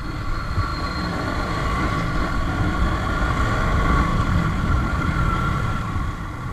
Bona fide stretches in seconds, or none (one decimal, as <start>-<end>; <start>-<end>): 0.0-0.7; 3.2-4.1; 6.0-6.5